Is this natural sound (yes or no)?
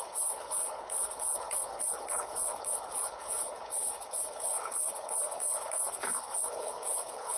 no